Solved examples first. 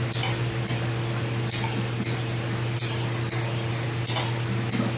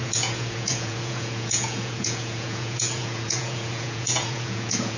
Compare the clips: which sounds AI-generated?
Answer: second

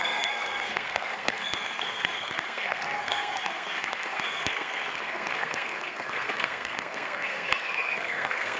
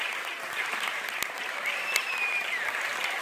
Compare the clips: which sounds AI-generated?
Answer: first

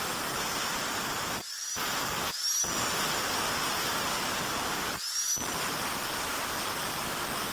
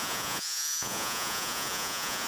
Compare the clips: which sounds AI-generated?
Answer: second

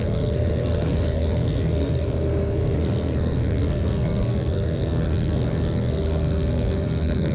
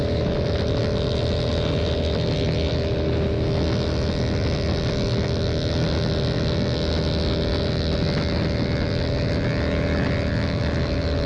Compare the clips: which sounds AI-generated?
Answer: first